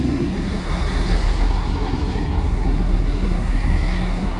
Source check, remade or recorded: remade